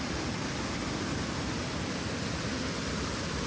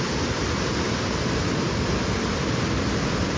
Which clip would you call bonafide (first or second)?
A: second